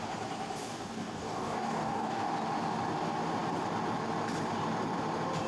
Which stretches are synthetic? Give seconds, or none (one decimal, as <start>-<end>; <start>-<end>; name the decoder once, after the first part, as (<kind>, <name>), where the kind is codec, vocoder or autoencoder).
0.6-2.3 (codec, DAC)